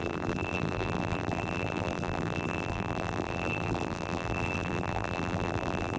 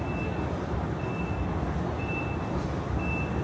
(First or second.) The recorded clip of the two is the second